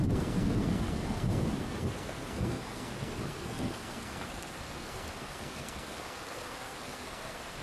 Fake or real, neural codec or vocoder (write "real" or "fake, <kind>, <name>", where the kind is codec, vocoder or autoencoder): fake, codec, SNAC